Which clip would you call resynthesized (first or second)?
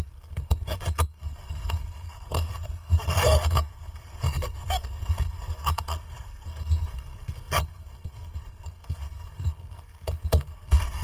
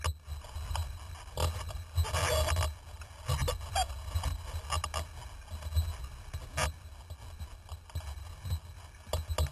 first